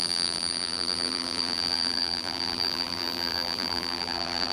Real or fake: fake